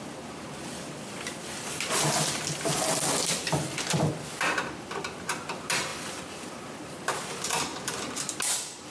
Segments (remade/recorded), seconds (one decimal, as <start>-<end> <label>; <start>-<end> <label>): 0.0-8.9 recorded